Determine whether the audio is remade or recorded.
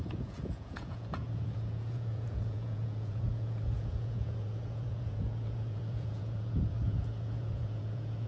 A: remade